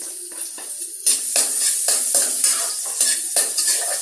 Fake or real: fake